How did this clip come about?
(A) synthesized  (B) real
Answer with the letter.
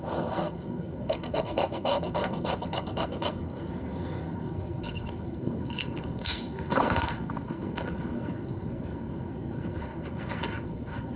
A